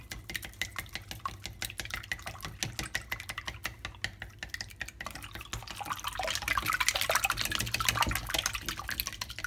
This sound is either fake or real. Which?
real